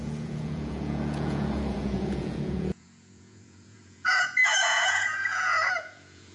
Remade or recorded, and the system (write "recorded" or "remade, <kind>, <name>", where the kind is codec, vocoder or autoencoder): remade, vocoder, Vocos